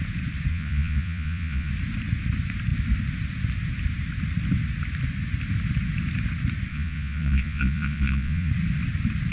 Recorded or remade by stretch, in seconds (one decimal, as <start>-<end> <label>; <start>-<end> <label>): 0.0-0.5 recorded; 0.5-1.7 remade; 1.7-6.7 recorded; 6.7-8.5 remade; 8.5-9.3 recorded

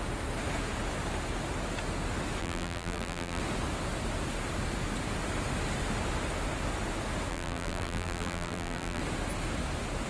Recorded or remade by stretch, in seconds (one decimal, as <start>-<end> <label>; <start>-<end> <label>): 0.0-2.4 recorded; 2.4-3.4 remade; 3.4-7.3 recorded; 7.3-9.0 remade; 9.0-10.1 recorded

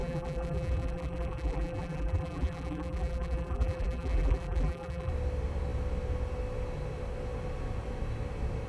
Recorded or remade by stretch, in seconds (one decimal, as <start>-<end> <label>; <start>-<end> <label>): 0.0-5.1 remade; 5.1-8.7 recorded